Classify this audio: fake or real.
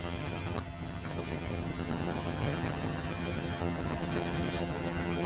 fake